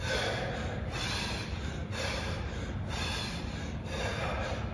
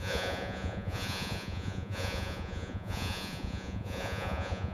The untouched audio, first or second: first